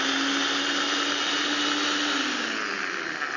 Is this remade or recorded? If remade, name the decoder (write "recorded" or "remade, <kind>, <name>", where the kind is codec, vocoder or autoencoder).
recorded